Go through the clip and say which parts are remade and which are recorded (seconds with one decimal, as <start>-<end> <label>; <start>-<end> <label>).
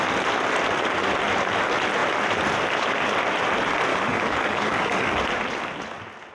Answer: 0.0-3.9 recorded; 3.9-5.2 remade; 5.2-6.3 recorded